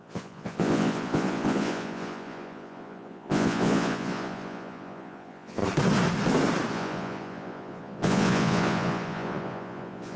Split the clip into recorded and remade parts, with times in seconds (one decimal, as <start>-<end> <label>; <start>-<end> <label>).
0.0-5.6 remade; 5.6-6.7 recorded; 6.7-10.2 remade